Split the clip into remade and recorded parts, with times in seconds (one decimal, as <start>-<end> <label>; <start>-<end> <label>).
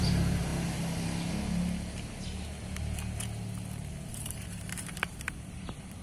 0.0-0.5 remade; 0.5-4.1 recorded; 4.1-6.0 remade